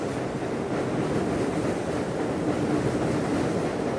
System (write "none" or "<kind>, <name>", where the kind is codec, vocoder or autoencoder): none